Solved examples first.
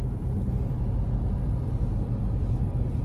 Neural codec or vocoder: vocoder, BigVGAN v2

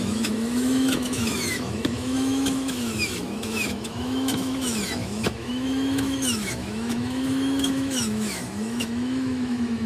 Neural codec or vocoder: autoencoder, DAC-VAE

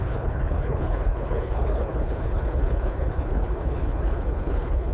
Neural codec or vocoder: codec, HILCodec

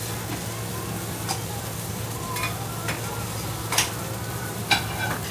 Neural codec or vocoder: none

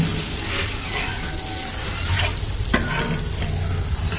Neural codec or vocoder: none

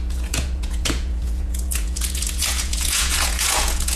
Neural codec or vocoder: vocoder, Vocos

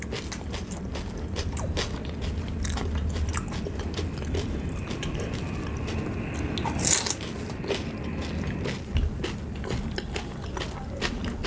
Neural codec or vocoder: none